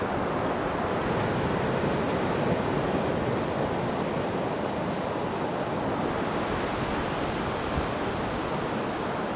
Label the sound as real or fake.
real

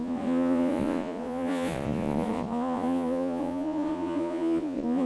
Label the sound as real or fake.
fake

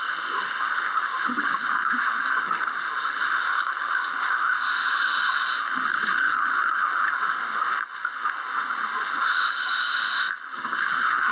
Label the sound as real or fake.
fake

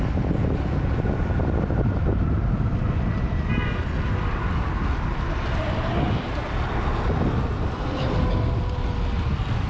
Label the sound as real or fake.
real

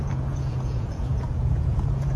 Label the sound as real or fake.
fake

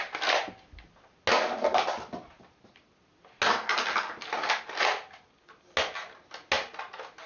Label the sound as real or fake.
real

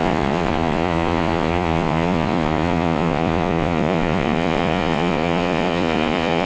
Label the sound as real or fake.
fake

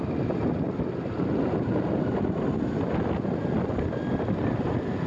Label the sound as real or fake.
real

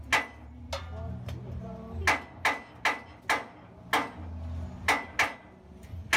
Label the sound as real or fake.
real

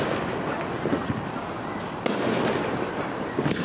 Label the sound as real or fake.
real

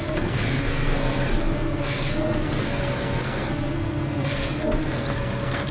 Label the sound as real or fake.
fake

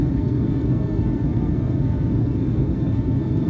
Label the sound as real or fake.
fake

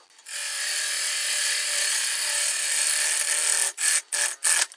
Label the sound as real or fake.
real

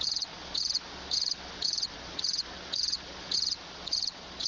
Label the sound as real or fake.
fake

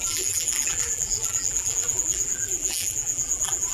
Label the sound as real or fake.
fake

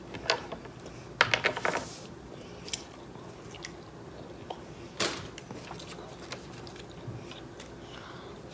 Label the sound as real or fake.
real